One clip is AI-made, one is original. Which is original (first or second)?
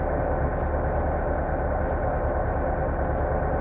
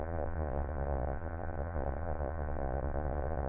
first